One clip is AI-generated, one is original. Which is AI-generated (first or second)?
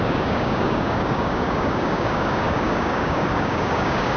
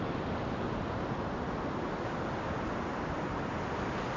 first